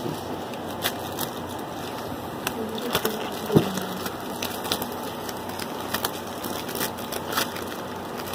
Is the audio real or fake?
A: real